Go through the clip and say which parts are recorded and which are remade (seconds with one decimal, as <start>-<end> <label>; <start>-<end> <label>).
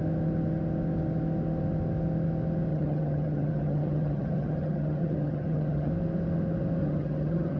0.0-2.7 recorded; 2.7-5.9 remade; 5.9-6.8 recorded; 6.8-7.6 remade